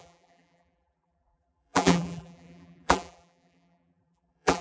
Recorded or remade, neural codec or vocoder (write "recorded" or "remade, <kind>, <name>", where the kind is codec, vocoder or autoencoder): remade, vocoder, BigVGAN v2